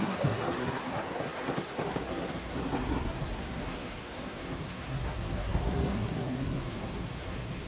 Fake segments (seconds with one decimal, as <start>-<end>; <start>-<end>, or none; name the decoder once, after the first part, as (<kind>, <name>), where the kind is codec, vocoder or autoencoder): 0.0-7.7 (codec, SNAC)